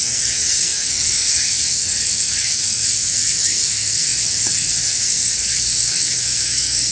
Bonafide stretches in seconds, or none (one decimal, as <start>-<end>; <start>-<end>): none